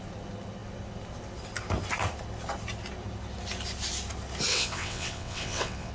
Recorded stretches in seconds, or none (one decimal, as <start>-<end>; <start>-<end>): 0.0-4.5